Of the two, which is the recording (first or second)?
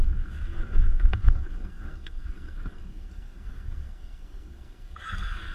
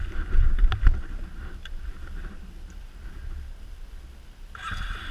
second